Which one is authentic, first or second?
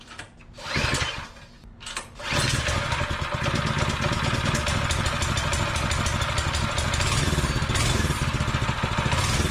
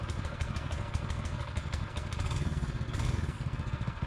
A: first